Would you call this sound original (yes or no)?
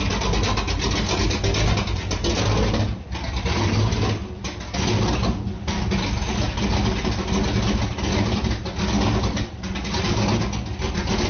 yes